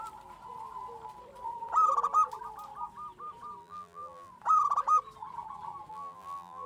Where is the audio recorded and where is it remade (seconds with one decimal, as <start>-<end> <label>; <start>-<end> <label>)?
0.0-3.6 recorded; 3.6-4.3 remade; 4.3-5.9 recorded; 5.9-6.7 remade